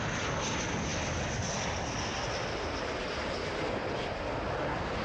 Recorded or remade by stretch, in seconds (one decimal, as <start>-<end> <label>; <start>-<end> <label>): 0.0-5.0 recorded